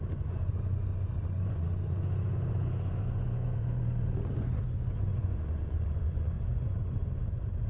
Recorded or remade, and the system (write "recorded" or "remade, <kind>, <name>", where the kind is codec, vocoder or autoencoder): remade, vocoder, Vocos